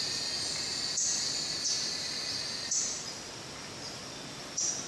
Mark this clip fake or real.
real